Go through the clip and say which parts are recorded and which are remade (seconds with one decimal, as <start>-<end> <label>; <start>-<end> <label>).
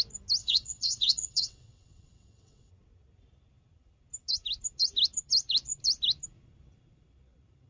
0.0-0.4 recorded; 0.4-2.7 remade; 2.7-7.7 recorded